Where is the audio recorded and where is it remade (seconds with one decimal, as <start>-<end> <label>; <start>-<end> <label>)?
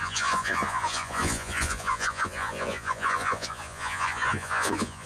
0.0-5.1 remade